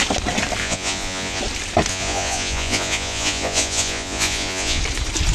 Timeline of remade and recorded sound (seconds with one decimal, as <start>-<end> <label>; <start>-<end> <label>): 0.0-0.6 recorded; 0.6-1.4 remade; 1.4-1.9 recorded; 1.9-4.8 remade; 4.8-5.3 recorded